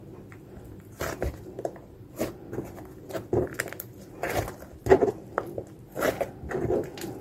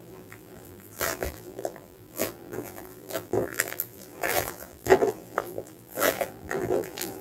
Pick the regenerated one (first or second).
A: second